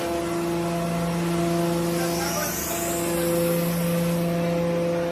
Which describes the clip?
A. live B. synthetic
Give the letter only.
A